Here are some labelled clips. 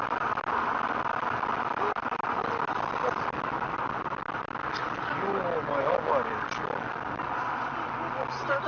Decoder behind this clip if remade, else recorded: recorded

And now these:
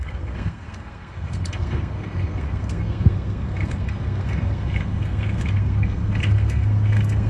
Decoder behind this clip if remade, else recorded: remade, codec, SNAC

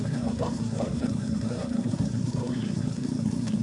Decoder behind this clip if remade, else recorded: remade, codec, SNAC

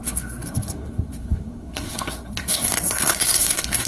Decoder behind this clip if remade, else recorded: remade, codec, SNAC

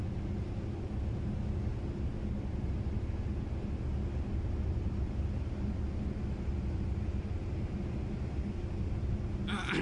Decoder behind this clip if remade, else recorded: recorded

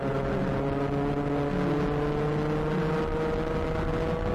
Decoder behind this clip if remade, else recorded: recorded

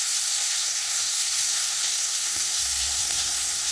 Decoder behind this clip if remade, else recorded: remade, codec, SNAC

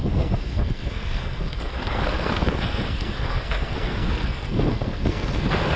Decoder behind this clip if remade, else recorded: remade, codec, SNAC